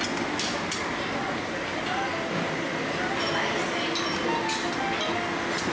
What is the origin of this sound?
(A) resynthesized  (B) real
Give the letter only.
B